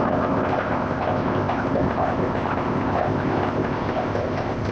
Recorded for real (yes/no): no